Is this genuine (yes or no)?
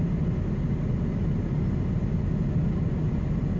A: yes